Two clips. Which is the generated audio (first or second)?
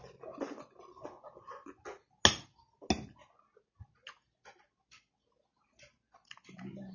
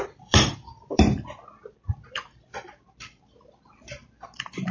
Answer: second